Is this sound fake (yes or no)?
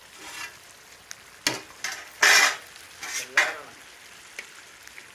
no